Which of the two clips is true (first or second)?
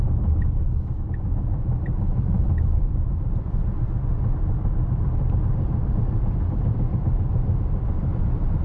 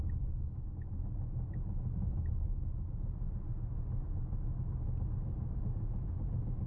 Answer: second